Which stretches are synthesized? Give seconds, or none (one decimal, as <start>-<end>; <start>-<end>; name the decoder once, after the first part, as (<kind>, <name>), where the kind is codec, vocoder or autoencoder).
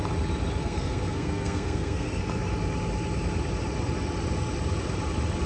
0.6-2.2 (codec, SNAC)